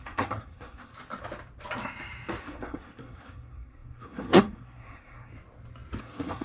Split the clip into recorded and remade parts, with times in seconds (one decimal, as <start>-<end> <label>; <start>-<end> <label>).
0.0-0.9 remade; 0.9-2.4 recorded; 2.4-5.3 remade; 5.3-6.0 recorded; 6.0-6.4 remade